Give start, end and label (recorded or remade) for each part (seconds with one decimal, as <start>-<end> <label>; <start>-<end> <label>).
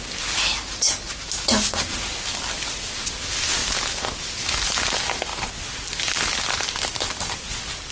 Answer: 0.0-7.9 recorded